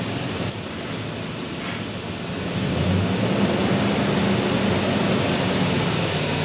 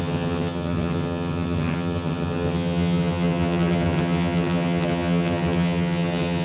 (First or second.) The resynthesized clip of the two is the second